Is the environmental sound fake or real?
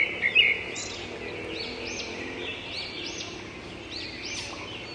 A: real